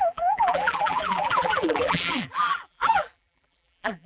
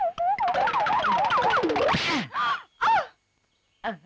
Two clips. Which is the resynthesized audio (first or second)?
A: first